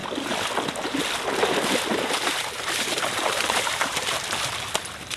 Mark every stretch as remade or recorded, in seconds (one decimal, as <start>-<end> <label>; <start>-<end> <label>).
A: 0.0-1.9 recorded; 1.9-4.5 remade; 4.5-5.2 recorded